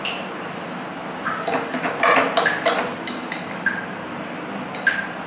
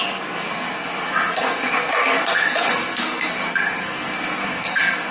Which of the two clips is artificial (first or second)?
second